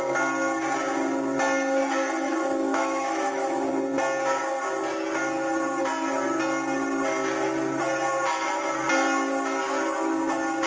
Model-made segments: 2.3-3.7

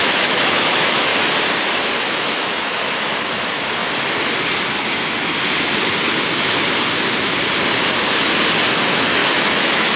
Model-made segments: 0.0-1.1; 2.0-3.8; 8.7-10.0

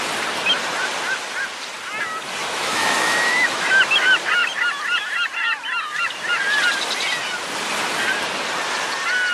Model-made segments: 2.4-3.8

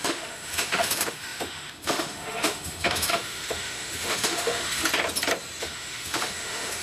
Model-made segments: 0.0-4.8; 5.6-6.8

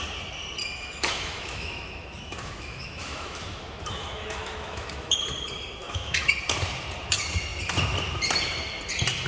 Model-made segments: 0.6-5.2; 5.8-6.3